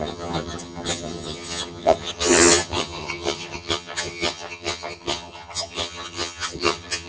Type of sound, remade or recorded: remade